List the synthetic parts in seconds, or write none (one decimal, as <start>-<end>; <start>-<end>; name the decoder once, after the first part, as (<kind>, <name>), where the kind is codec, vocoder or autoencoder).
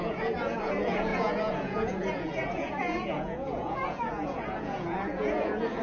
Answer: 0.0-5.8 (vocoder, Vocos)